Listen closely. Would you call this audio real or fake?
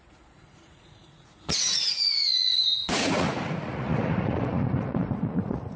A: fake